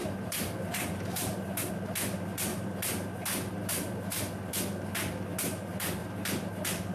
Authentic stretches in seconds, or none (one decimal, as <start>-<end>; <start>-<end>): 1.7-2.5; 4.5-6.0; 6.5-6.9